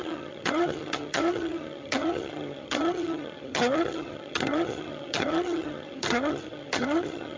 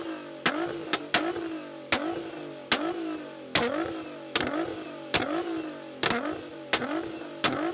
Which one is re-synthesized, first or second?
first